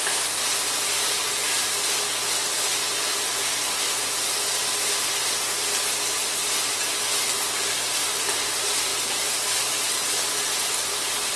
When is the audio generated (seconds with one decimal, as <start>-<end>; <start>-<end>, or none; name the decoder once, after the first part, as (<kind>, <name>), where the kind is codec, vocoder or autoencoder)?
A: 8.9-9.6 (vocoder, BigVGAN v2)